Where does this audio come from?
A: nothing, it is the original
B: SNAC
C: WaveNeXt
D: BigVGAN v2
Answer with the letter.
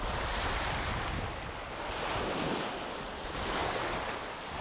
A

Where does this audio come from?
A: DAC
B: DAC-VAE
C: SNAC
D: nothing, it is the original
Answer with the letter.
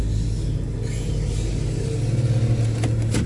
D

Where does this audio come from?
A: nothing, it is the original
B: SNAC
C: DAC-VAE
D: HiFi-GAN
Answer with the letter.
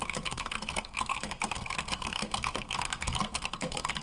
B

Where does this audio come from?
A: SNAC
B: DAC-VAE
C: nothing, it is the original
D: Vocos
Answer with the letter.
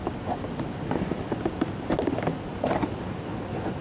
C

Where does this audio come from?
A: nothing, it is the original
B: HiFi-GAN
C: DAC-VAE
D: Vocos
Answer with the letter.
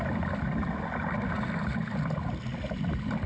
A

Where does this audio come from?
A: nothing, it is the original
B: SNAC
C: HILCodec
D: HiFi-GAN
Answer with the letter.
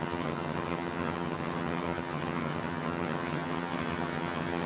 D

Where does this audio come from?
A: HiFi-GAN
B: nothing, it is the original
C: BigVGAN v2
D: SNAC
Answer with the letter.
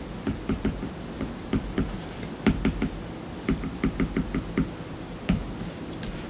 B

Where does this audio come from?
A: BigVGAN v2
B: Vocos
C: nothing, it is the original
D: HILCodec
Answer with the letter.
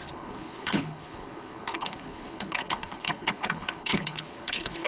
D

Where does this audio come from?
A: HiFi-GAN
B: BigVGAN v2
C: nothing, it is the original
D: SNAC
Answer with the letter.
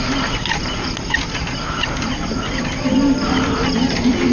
C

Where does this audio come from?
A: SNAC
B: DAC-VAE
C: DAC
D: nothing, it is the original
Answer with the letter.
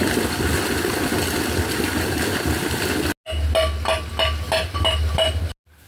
D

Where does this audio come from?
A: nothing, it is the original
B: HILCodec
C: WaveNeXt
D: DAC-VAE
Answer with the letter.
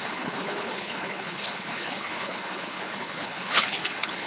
B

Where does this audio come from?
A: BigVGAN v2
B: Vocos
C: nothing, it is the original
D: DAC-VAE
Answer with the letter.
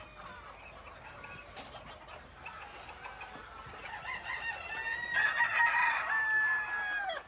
C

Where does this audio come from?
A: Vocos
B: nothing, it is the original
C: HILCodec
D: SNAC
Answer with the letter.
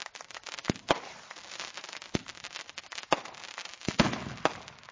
B